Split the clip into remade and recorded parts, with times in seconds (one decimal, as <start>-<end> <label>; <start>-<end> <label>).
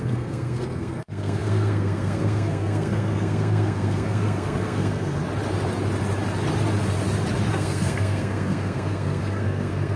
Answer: 0.0-5.2 remade; 5.2-7.5 recorded; 7.5-10.0 remade